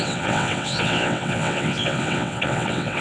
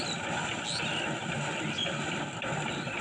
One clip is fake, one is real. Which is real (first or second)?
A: second